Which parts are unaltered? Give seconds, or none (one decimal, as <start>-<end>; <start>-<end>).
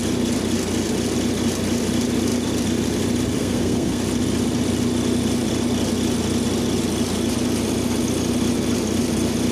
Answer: 0.0-3.4; 4.0-9.5